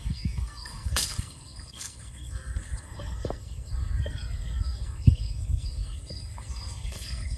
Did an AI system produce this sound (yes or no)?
yes